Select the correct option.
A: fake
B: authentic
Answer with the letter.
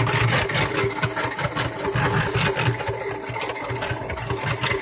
B